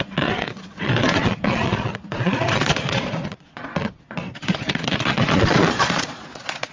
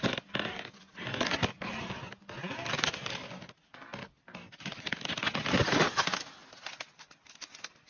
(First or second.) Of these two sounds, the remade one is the first